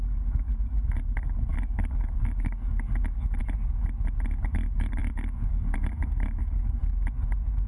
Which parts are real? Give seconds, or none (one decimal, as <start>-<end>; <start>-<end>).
3.4-4.4; 6.8-7.7